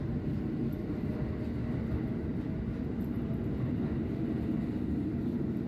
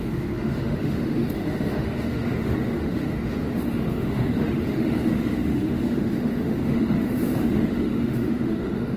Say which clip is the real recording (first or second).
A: first